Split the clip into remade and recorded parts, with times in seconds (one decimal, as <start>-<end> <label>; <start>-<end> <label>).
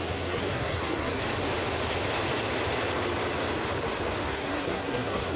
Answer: 0.0-1.2 remade; 1.2-4.3 recorded; 4.3-5.4 remade